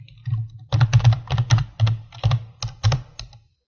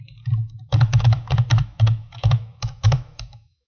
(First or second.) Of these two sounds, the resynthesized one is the second